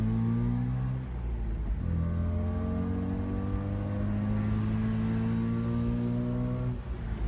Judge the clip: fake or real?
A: real